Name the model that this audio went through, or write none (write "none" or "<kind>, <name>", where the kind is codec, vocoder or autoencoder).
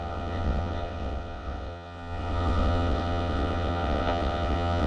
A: vocoder, WaveNeXt